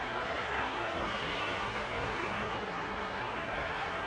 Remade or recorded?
remade